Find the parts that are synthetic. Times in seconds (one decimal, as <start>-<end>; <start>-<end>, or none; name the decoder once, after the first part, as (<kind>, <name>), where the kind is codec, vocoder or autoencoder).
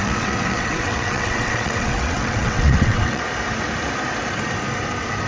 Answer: 0.0-3.2 (vocoder, WaveNeXt)